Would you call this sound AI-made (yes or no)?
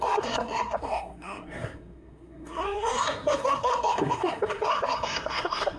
yes